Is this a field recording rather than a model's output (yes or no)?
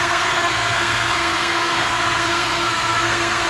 no